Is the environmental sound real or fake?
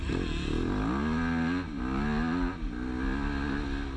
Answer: real